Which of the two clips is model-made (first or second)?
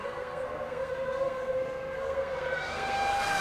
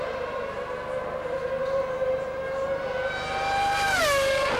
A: first